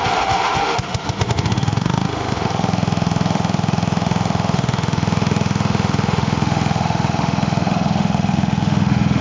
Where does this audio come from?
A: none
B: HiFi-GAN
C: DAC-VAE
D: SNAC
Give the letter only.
C